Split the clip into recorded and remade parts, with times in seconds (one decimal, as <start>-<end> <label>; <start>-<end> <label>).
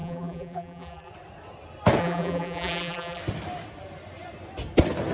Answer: 0.0-1.1 remade; 1.1-2.0 recorded; 2.0-3.2 remade; 3.2-5.1 recorded